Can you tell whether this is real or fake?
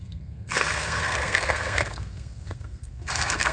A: fake